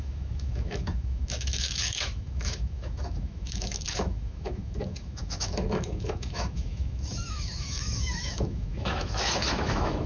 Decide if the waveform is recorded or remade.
remade